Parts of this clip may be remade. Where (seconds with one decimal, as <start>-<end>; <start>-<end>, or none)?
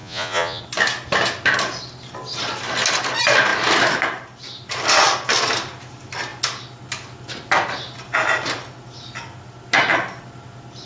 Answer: 0.0-0.6